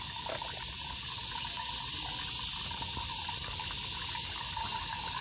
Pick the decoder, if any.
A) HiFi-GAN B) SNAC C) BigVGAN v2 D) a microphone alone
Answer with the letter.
D